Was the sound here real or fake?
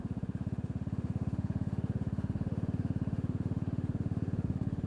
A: fake